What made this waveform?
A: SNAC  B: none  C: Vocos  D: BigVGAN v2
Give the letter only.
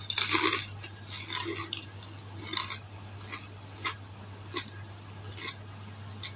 B